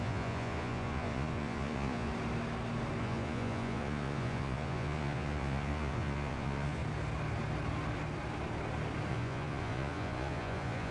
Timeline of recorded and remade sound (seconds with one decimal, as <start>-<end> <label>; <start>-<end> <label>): 0.0-2.1 remade; 2.1-3.0 recorded; 3.0-6.8 remade; 6.8-9.1 recorded; 9.1-10.9 remade